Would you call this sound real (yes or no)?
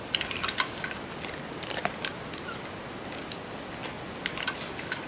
yes